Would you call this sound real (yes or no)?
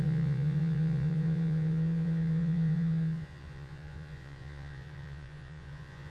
no